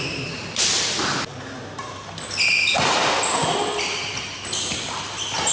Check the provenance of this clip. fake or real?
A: real